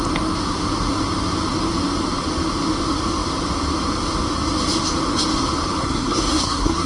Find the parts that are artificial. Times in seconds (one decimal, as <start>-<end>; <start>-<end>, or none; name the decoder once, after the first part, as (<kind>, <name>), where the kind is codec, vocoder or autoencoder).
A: 5.8-6.9 (codec, SNAC)